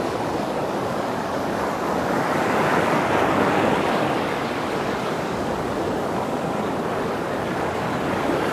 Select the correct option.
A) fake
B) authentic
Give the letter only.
A